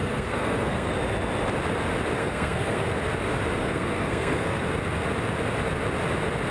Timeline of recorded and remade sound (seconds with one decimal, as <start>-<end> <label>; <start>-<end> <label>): 0.0-0.9 remade; 0.9-2.2 recorded; 2.2-2.9 remade; 2.9-3.6 recorded; 3.6-4.6 remade; 4.6-6.5 recorded